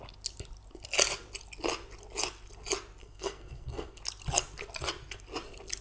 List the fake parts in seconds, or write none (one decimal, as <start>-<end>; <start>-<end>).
3.0-4.0